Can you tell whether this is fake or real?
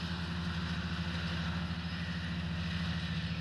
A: real